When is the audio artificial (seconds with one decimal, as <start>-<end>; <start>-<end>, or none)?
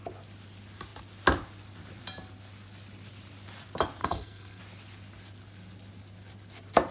4.0-4.6